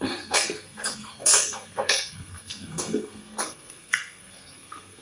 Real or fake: fake